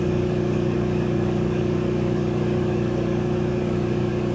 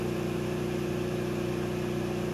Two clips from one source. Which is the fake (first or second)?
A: first